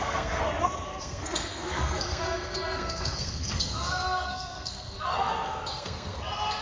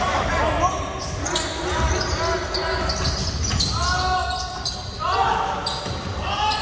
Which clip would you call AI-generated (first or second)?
first